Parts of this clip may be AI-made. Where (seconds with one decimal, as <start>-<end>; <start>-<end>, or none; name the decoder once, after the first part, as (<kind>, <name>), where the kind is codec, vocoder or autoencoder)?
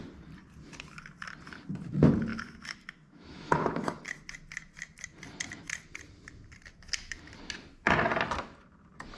2.3-4.0 (autoencoder, DAC-VAE)